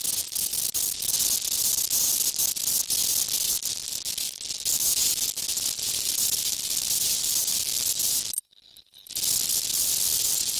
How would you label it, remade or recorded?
recorded